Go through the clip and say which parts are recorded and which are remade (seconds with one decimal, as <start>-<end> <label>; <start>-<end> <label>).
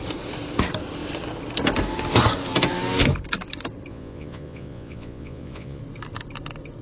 0.0-3.9 recorded; 3.9-5.8 remade; 5.8-6.8 recorded